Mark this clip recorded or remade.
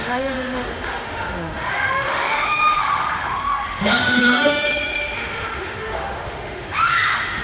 remade